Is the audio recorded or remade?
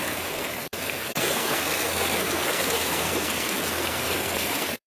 remade